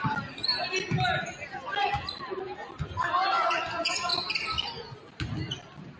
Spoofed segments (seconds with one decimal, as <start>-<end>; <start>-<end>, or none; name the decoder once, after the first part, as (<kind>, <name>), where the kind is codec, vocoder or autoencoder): none